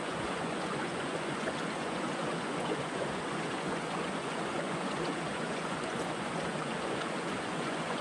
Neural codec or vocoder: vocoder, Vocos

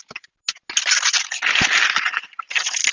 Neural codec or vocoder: none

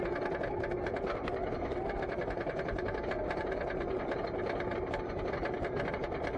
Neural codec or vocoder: none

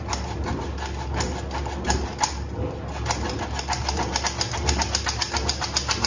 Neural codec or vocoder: none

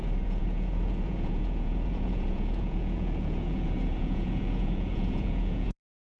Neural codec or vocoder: vocoder, Vocos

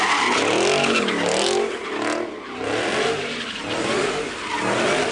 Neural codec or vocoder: none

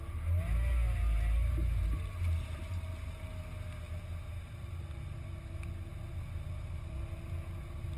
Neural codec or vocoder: none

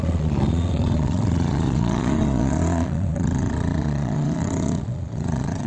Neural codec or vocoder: vocoder, Vocos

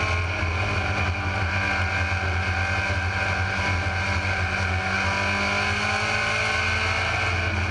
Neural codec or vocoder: none